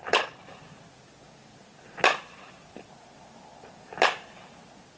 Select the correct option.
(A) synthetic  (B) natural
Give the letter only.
B